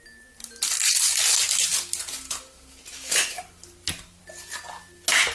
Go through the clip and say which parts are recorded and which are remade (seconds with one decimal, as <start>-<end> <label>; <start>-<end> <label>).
0.0-5.3 recorded